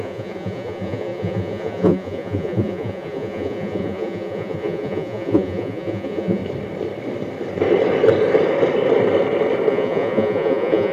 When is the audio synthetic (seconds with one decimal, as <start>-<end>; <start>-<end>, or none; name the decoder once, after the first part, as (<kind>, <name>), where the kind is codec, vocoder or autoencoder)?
0.0-6.4 (vocoder, Vocos); 9.7-10.9